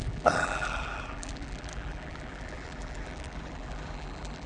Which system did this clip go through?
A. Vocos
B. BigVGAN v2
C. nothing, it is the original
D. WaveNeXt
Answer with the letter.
B